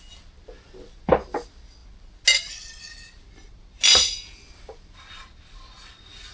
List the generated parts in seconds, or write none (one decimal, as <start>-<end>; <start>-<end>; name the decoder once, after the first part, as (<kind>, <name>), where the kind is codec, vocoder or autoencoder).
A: none

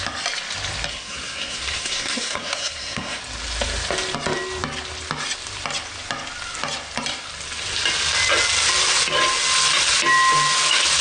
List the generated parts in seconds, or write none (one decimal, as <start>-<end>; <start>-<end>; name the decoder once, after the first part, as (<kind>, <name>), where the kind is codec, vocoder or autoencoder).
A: 0.9-3.2 (codec, SNAC)

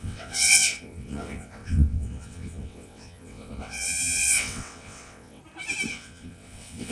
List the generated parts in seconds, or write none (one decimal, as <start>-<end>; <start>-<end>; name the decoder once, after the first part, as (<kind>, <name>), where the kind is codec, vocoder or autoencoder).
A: 0.0-5.4 (vocoder, WaveNeXt); 5.9-6.9

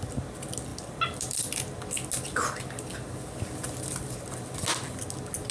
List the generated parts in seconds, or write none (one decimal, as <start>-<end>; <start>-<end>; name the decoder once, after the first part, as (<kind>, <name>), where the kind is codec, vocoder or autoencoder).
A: none

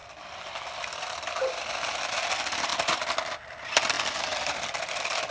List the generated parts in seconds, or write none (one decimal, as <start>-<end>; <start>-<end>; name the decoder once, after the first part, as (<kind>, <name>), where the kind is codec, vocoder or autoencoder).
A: 0.0-1.5 (vocoder, BigVGAN v2); 2.7-3.5; 4.3-5.3

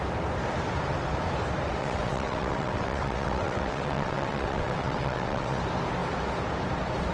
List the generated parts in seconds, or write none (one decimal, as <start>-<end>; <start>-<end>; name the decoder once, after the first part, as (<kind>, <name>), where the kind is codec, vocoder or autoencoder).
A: 1.8-5.6 (vocoder, WaveNeXt)

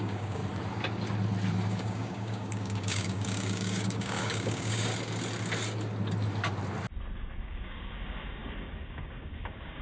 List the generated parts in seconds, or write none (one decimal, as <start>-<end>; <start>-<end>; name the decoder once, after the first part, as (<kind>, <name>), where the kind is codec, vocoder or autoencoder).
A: 0.0-0.4 (codec, DAC); 1.7-4.9; 7.4-9.8

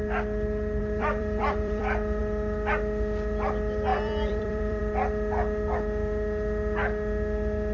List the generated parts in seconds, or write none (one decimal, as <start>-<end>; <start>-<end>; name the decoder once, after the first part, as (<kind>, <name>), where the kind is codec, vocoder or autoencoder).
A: 0.8-2.2 (vocoder, BigVGAN v2); 3.9-4.8